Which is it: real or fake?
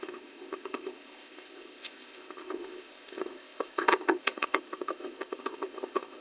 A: fake